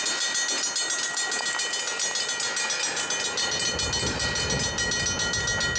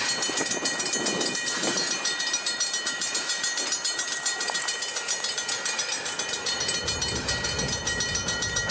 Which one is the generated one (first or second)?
second